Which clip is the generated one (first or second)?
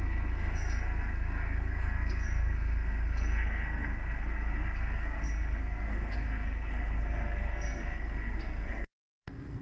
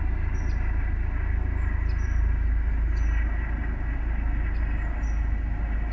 first